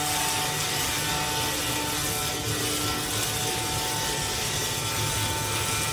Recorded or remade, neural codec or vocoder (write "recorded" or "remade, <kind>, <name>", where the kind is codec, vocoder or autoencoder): recorded